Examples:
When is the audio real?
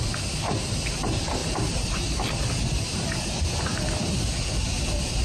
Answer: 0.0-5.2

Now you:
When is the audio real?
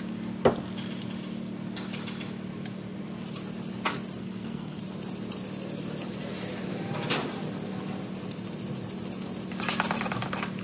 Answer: 0.0-4.2; 4.8-10.6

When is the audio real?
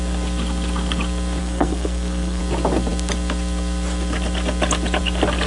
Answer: 0.0-1.4; 2.4-5.5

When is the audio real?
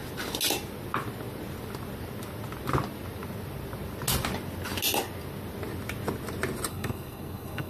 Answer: 0.0-6.7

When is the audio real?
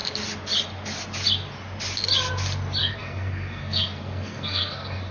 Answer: 0.0-2.8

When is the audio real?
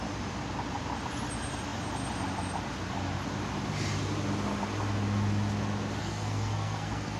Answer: 0.0-6.0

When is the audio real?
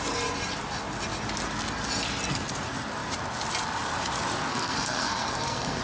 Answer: 0.0-4.5